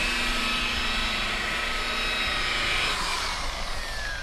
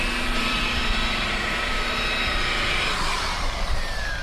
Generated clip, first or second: second